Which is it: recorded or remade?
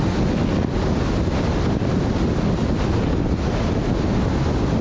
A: recorded